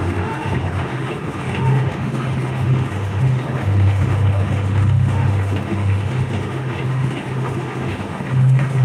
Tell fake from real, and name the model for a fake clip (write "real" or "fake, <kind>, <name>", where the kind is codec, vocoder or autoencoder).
fake, autoencoder, DAC-VAE